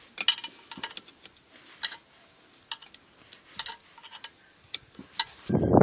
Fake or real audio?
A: real